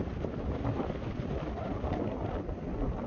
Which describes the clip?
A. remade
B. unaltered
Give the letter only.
B